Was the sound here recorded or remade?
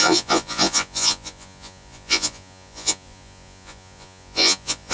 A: remade